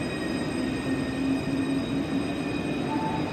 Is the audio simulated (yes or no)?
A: no